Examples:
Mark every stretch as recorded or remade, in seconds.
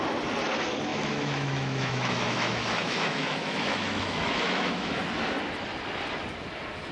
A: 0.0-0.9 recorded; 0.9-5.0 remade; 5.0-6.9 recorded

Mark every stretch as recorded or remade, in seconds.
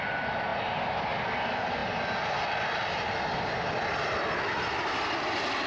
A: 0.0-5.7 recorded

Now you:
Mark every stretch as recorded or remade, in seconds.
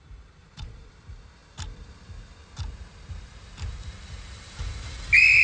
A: 0.0-0.4 recorded; 0.4-0.9 remade; 0.9-5.4 recorded